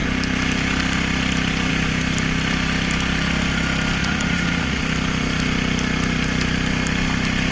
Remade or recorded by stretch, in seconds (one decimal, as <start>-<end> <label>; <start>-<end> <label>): 0.0-4.0 recorded; 4.0-4.8 remade; 4.8-7.5 recorded